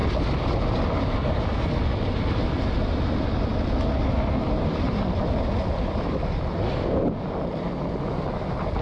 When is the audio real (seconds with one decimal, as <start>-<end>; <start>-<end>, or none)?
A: 0.0-8.8